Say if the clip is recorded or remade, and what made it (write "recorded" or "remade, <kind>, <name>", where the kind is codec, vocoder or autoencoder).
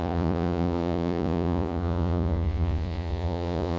remade, vocoder, Vocos